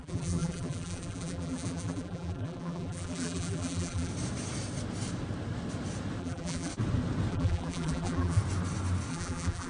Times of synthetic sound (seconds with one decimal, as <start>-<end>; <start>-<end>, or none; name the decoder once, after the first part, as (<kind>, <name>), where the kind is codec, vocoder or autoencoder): 0.0-4.1 (vocoder, BigVGAN v2); 6.2-6.7; 7.3-8.4; 9.1-9.7